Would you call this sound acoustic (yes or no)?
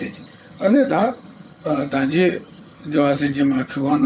no